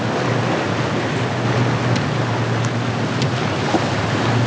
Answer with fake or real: real